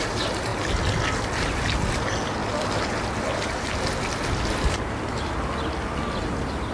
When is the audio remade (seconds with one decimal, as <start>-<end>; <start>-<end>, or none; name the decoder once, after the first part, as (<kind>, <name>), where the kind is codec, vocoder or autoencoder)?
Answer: none